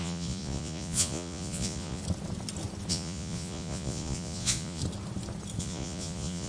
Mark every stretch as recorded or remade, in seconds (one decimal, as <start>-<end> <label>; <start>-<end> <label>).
0.0-2.0 remade; 2.0-2.9 recorded; 2.9-4.8 remade; 4.8-5.6 recorded; 5.6-6.5 remade